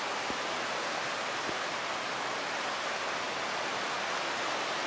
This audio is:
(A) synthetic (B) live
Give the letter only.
B